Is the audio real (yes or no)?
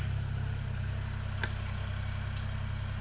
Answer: yes